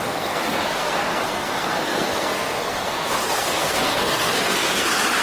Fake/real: fake